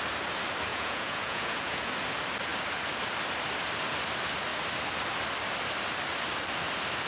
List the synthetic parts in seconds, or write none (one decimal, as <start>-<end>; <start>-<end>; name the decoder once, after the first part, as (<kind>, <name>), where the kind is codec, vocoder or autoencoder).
0.7-1.9 (vocoder, Vocos)